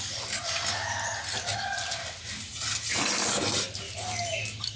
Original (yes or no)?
yes